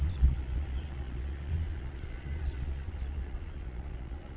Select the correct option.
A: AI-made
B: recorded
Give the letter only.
A